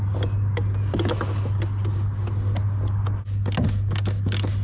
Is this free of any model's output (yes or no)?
yes